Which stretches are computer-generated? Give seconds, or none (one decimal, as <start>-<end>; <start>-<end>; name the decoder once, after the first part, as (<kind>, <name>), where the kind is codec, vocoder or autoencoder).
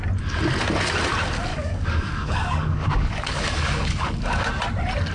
1.5-4.6 (codec, DAC)